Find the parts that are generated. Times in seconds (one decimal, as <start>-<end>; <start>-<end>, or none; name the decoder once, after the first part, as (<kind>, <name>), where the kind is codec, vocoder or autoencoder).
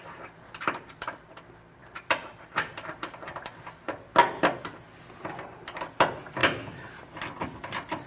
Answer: none